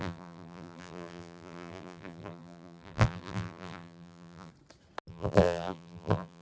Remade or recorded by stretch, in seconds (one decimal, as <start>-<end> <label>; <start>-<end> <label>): 0.0-4.5 remade; 4.5-5.1 recorded; 5.1-6.4 remade